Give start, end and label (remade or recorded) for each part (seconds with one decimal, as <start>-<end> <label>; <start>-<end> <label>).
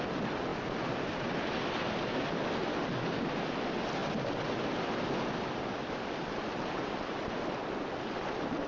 0.0-8.7 recorded